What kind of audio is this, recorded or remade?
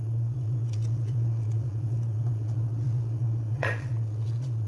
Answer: remade